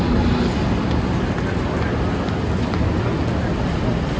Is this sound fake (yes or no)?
no